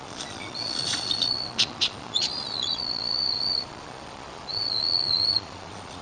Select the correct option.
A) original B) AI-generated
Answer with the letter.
B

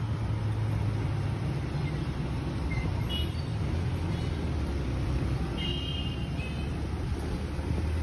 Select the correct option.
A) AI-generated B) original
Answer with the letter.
B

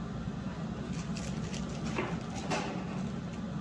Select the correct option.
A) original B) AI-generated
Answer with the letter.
A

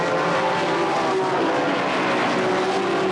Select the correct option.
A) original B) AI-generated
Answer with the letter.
A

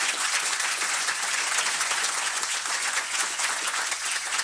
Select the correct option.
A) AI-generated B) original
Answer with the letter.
A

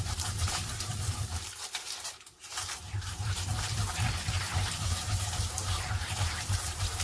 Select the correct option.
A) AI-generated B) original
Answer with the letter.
A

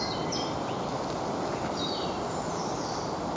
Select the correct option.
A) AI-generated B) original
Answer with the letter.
B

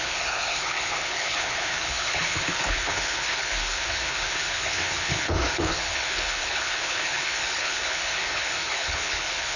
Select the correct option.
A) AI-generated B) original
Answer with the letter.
A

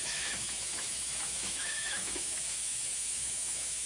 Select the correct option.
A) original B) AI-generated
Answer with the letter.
B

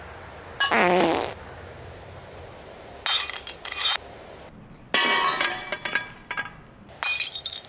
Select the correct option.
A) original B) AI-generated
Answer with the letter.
A